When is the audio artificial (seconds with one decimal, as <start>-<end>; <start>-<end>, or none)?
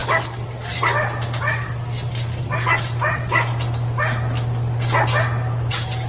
none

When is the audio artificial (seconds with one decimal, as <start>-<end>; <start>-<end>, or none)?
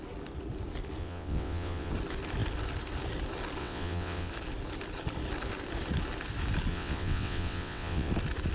1.0-1.9; 3.6-4.3; 6.7-8.1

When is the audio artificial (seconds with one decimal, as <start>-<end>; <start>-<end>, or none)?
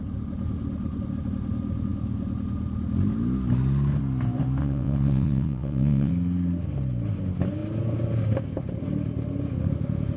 4.6-6.1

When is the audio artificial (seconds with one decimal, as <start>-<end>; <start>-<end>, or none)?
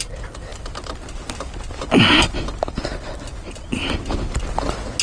none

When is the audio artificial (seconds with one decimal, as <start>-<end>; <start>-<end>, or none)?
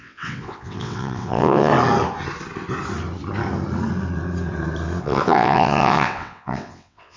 0.0-1.7; 5.0-7.2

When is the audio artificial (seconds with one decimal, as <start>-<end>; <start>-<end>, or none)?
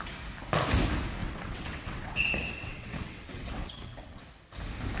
1.2-4.2